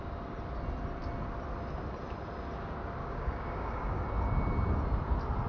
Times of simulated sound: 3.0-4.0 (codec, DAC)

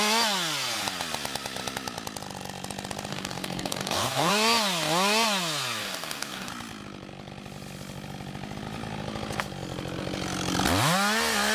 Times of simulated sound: 3.1-4.3 (codec, DAC); 5.8-6.5

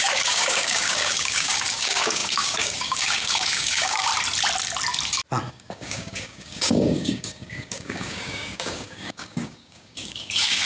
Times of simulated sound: 0.0-4.1 (codec, DAC); 5.5-10.7

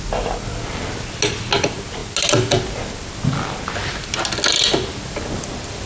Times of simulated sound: none

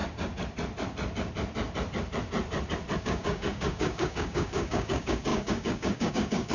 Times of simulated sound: 3.0-6.5 (codec, DAC)

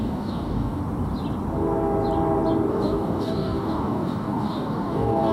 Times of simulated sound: 0.0-0.8 (codec, DAC); 2.7-5.3